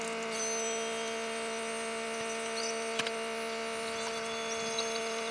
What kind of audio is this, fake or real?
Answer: real